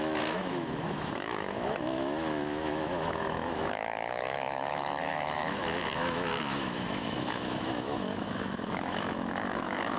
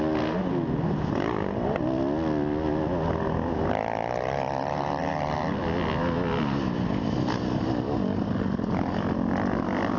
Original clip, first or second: second